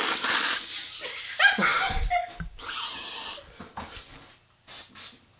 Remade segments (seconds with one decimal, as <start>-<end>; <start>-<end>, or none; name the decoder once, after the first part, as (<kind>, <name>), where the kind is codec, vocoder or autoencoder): none